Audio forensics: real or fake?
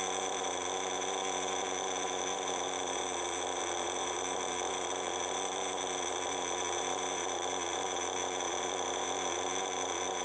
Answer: fake